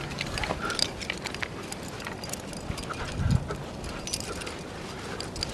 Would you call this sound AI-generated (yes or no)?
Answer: no